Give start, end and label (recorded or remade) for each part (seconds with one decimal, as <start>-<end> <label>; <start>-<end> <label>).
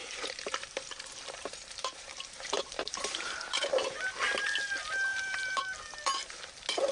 0.0-4.1 remade; 4.1-5.1 recorded; 5.1-5.6 remade; 5.6-6.9 recorded